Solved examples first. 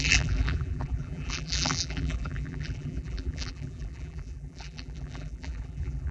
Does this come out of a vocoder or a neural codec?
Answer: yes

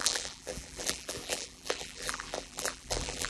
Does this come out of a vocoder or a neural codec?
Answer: yes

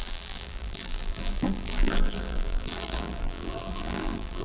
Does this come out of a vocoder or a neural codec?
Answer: yes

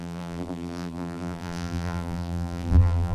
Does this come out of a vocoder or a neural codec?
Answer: yes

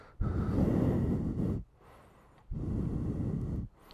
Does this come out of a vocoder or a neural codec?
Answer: no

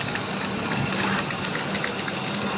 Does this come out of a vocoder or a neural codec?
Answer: no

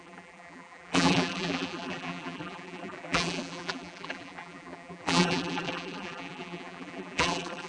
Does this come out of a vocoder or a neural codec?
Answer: yes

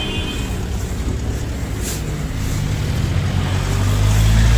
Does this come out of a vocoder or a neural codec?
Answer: no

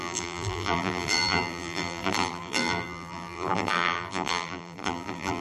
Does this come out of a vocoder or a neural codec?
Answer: yes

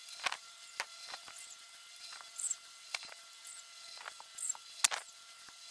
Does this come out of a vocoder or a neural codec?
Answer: no